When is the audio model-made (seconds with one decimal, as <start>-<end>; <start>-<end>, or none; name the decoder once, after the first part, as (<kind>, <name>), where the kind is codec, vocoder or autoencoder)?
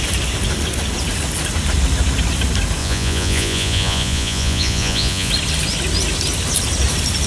2.8-5.3 (vocoder, Vocos)